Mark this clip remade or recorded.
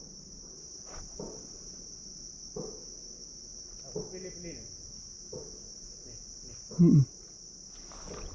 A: recorded